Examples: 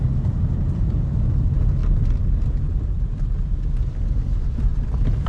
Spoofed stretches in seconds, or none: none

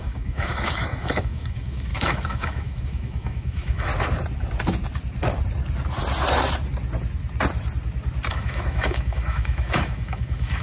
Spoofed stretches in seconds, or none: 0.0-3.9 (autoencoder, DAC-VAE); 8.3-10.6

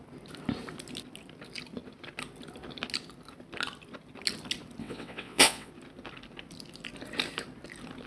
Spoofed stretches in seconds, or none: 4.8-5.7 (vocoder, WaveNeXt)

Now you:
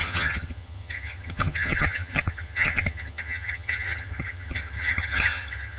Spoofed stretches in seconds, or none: 0.0-5.8 (vocoder, HiFi-GAN)

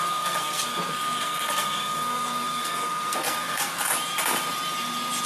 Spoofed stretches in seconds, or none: 0.0-3.9 (codec, SNAC)